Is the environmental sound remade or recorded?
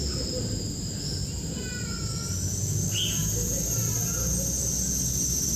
recorded